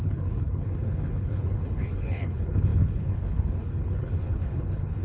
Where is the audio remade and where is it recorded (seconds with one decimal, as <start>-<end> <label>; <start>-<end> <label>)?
0.0-5.0 remade